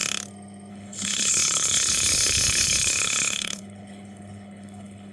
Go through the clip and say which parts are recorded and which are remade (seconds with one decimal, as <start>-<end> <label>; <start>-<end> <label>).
0.0-0.7 recorded; 0.7-5.1 remade